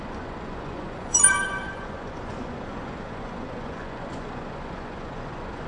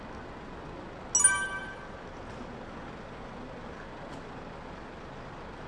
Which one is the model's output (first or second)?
first